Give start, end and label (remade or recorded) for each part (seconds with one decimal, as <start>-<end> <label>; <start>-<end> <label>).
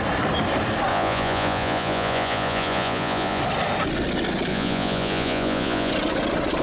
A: 0.0-0.9 recorded; 0.9-3.4 remade; 3.4-4.5 recorded; 4.5-5.9 remade; 5.9-6.6 recorded